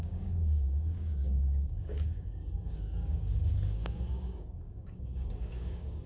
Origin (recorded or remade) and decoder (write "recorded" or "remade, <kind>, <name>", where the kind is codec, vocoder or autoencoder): remade, codec, DAC